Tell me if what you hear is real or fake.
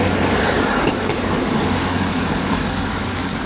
fake